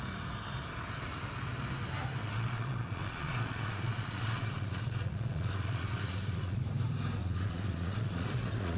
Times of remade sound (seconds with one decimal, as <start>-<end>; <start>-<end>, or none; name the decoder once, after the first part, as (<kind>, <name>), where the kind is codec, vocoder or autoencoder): 2.2-6.6 (vocoder, Vocos); 7.2-8.8